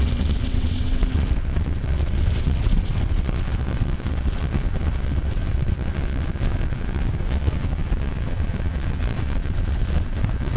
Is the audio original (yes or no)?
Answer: no